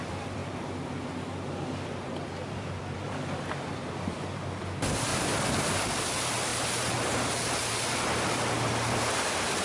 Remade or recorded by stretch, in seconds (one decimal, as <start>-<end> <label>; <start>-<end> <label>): 0.0-0.4 remade; 0.4-2.5 recorded; 2.5-5.1 remade; 5.1-5.8 recorded; 5.8-6.5 remade; 6.5-7.1 recorded; 7.1-9.6 remade